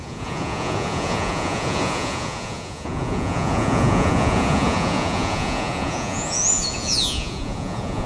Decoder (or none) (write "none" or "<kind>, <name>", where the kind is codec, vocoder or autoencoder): vocoder, Vocos